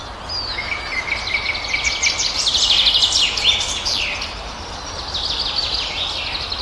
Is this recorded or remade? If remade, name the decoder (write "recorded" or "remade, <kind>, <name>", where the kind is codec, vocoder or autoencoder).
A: recorded